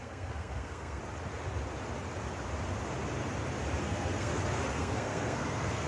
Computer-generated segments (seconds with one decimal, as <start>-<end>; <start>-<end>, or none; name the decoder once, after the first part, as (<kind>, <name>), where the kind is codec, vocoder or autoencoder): 0.0-1.0 (codec, SNAC); 3.8-5.9